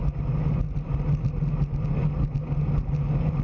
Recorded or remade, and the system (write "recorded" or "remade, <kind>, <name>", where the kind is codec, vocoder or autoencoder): recorded